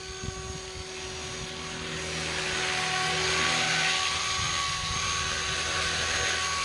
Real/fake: real